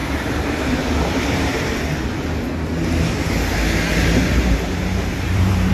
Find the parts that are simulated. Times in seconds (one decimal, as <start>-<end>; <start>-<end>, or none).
0.0-2.1; 3.9-5.7